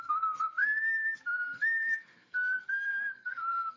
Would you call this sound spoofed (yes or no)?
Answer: yes